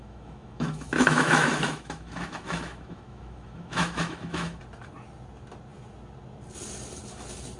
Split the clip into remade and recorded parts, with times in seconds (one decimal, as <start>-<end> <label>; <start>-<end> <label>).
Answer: 0.0-4.6 remade; 4.6-7.6 recorded